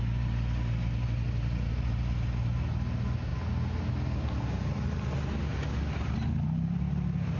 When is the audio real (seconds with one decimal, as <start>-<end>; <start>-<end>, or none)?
0.0-7.4